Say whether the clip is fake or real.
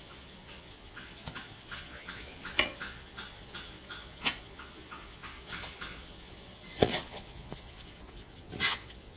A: fake